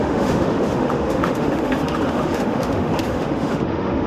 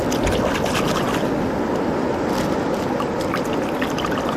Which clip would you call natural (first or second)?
second